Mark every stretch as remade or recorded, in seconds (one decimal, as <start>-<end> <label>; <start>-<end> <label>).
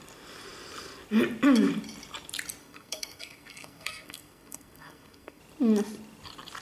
0.0-2.6 recorded; 2.6-5.4 remade; 5.4-6.6 recorded